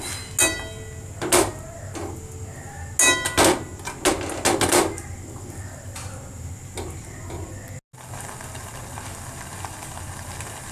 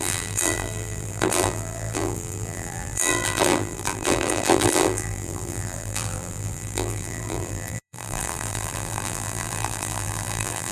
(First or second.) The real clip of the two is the first